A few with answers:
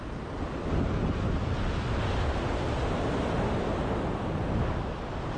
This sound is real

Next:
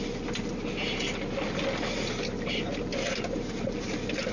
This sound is real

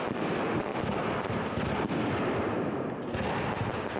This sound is real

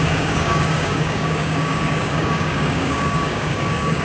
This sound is fake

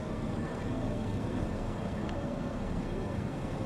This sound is fake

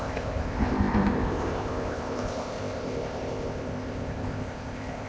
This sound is fake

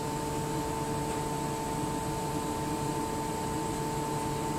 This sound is real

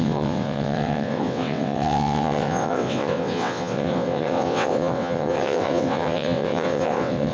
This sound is fake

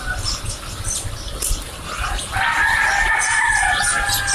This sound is real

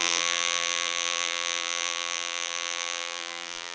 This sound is fake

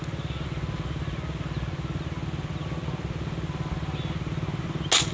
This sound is real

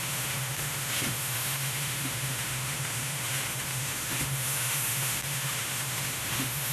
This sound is fake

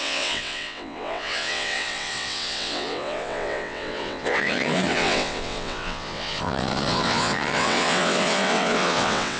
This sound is fake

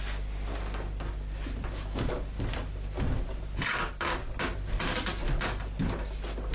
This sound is real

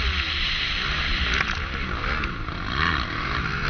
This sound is real